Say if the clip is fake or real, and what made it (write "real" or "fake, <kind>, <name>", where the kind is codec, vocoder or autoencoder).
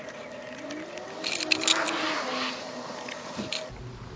real